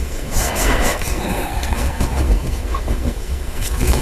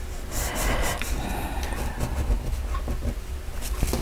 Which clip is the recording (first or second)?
second